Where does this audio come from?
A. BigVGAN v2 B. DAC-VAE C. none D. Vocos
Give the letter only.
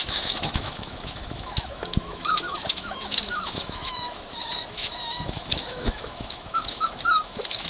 B